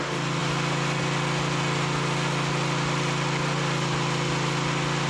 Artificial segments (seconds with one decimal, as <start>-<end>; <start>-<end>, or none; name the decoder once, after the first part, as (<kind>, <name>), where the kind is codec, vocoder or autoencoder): none